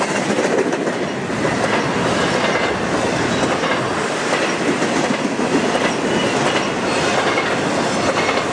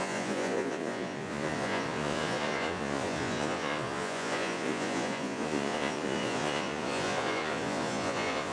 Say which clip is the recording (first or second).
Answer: first